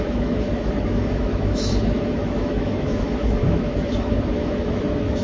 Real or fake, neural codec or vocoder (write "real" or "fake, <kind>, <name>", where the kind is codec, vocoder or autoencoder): fake, autoencoder, DAC-VAE